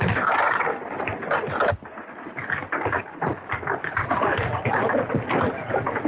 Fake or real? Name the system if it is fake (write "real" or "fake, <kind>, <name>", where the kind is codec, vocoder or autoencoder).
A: fake, vocoder, BigVGAN v2